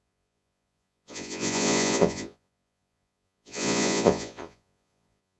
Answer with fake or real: fake